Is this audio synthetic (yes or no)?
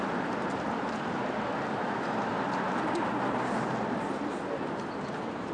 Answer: no